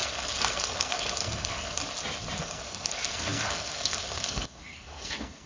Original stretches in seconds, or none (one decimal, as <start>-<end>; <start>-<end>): 1.8-2.4